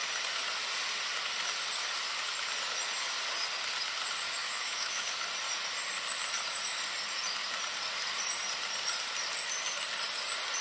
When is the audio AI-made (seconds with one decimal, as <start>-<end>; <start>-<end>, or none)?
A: 4.4-5.1